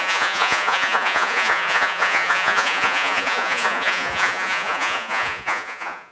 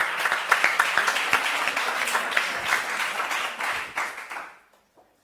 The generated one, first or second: first